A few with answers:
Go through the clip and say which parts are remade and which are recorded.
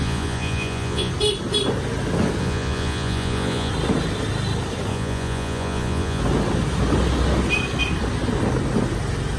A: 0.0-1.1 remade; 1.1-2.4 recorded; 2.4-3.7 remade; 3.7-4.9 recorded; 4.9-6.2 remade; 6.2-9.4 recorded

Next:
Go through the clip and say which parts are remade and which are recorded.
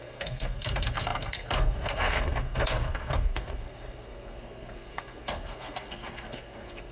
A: 0.0-6.9 remade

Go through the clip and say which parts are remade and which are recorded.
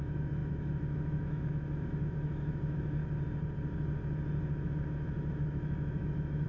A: 0.0-3.0 remade; 3.0-4.6 recorded; 4.6-6.5 remade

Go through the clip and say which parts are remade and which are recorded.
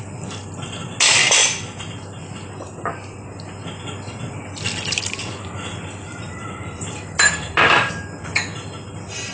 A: 0.0-6.1 recorded; 6.1-7.9 remade; 7.9-9.3 recorded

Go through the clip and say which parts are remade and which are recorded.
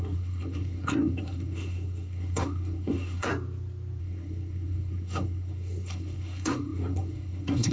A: 0.0-3.3 remade; 3.3-4.0 recorded; 4.0-7.7 remade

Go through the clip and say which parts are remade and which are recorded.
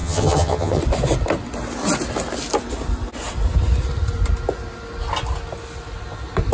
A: 0.0-0.8 remade; 0.8-6.5 recorded